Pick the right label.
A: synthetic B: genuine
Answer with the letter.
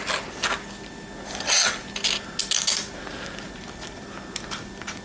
B